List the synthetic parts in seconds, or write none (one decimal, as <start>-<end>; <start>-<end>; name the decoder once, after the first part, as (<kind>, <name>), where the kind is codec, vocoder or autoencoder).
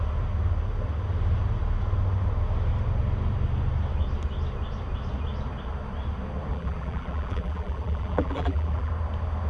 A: 6.5-8.9 (vocoder, BigVGAN v2)